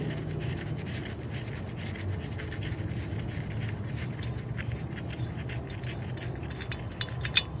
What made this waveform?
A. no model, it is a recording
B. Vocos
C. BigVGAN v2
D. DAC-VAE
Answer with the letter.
A